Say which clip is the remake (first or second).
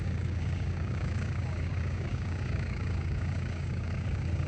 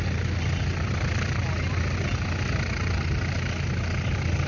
first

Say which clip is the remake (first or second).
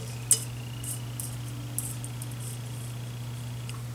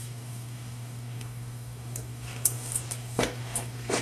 second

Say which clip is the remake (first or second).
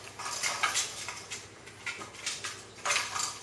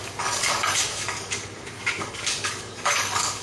second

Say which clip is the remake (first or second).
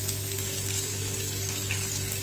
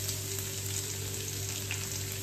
first